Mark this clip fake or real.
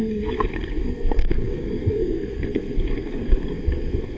fake